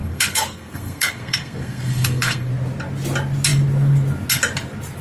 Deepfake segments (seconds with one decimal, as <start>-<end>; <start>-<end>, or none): 0.0-2.5